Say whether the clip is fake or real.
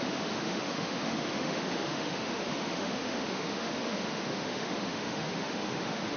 fake